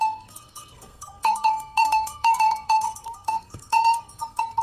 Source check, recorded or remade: remade